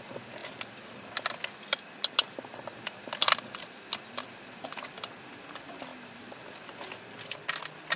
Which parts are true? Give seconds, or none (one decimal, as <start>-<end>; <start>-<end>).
0.0-8.0